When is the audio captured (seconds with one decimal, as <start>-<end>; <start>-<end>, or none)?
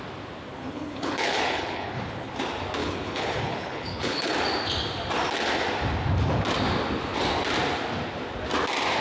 0.0-0.5; 2.3-2.8; 4.3-9.0